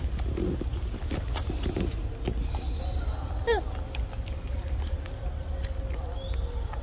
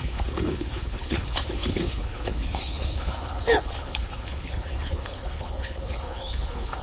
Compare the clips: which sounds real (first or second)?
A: first